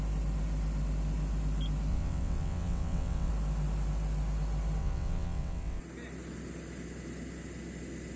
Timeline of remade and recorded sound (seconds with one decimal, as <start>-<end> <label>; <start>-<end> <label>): 0.0-1.9 recorded; 1.9-3.3 remade; 3.3-4.8 recorded; 4.8-5.8 remade; 5.8-8.2 recorded